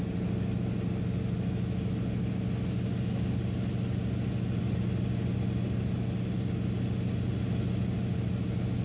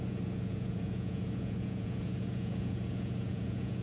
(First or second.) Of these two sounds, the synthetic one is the second